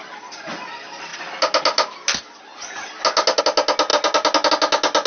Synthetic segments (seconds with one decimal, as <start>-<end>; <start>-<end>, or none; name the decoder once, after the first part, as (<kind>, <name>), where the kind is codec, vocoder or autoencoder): none